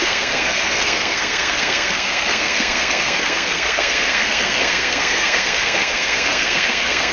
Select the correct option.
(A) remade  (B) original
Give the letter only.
A